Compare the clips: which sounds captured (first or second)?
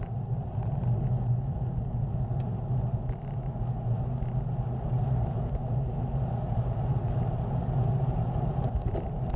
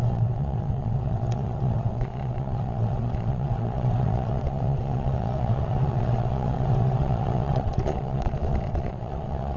first